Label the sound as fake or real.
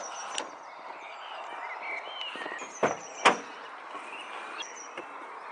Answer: real